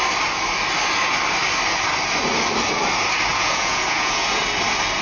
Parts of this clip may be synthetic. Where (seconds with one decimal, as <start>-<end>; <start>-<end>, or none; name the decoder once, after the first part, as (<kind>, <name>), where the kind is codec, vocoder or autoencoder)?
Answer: 3.3-4.4 (vocoder, Vocos)